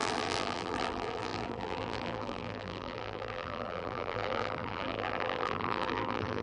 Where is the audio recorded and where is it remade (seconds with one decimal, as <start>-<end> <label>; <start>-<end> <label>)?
0.0-6.4 remade